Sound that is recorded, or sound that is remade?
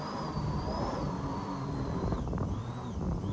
remade